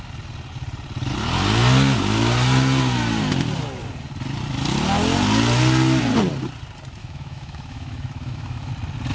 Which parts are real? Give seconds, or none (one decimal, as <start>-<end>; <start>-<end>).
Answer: 0.0-7.0; 8.7-9.1